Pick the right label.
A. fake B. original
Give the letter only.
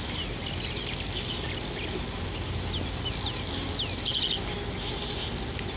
B